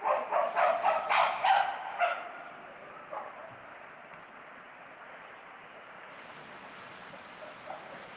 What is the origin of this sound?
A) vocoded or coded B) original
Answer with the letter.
B